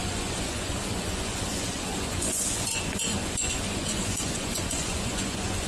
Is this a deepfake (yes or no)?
yes